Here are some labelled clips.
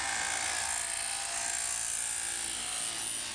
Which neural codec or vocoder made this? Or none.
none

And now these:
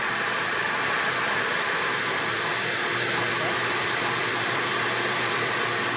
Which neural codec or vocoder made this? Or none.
vocoder, BigVGAN v2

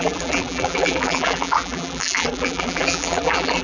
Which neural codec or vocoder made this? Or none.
vocoder, BigVGAN v2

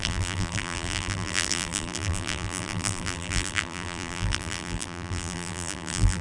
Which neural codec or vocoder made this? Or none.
vocoder, BigVGAN v2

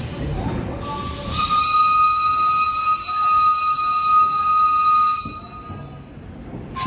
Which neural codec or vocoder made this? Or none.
none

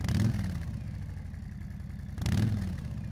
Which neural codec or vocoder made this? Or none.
none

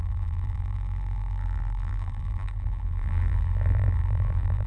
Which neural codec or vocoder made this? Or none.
vocoder, BigVGAN v2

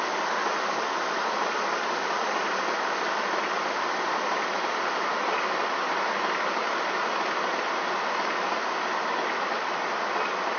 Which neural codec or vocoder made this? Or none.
none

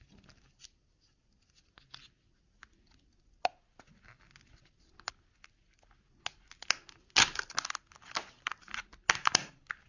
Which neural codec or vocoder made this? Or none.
none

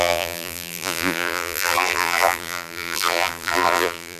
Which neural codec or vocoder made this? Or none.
vocoder, BigVGAN v2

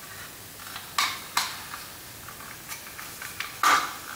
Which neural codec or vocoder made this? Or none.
none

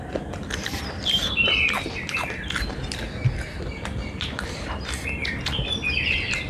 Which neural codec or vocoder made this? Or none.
vocoder, BigVGAN v2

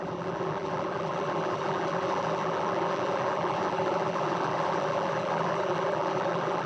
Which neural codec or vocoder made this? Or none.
vocoder, BigVGAN v2